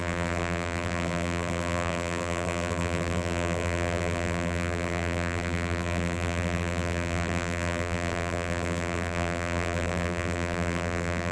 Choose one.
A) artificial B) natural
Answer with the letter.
A